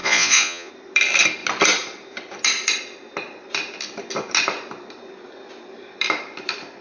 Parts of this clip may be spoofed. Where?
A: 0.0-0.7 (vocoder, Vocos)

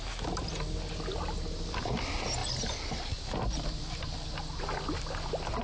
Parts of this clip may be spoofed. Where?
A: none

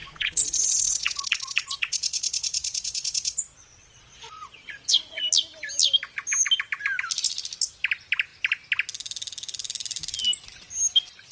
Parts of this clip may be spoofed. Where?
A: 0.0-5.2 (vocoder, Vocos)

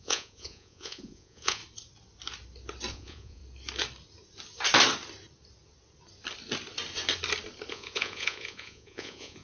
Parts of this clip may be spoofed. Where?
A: 0.0-1.6 (vocoder, Vocos); 2.9-3.4; 7.7-9.4

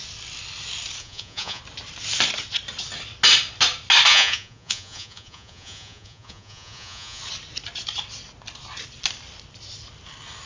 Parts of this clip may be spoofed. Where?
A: 1.0-1.6 (vocoder, Vocos); 4.1-7.2